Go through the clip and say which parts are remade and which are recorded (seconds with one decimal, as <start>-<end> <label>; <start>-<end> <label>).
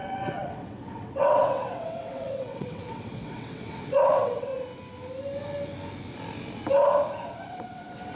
0.0-4.5 remade; 4.5-7.5 recorded; 7.5-8.1 remade